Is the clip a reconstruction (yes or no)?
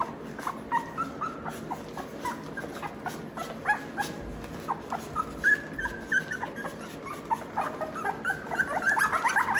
no